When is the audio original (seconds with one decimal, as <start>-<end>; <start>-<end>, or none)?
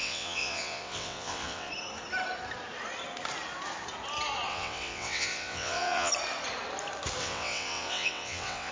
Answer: 1.7-4.5; 6.1-7.2